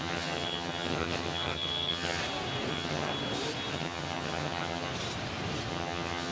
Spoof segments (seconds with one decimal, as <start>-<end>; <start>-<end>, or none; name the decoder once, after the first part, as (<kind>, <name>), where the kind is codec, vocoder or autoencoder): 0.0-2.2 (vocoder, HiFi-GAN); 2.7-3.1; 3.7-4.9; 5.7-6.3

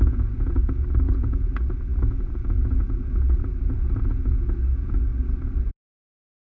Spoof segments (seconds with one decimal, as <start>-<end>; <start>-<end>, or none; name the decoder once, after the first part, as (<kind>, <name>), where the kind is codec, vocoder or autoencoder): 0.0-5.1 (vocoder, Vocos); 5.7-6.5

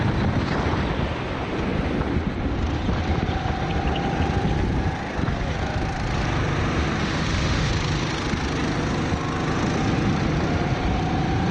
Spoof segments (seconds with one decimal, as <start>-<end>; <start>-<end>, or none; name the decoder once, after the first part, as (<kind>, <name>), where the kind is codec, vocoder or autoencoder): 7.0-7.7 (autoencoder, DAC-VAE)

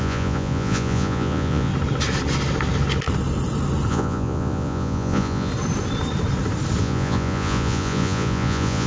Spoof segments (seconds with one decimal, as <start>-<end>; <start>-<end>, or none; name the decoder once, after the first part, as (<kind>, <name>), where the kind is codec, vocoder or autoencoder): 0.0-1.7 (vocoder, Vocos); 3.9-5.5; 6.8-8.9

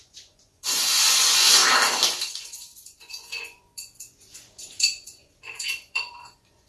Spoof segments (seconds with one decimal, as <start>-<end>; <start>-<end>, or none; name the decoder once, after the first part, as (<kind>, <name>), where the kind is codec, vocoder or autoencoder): 0.0-1.6 (vocoder, Vocos); 2.3-6.7